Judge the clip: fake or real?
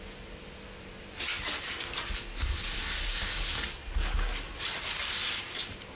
real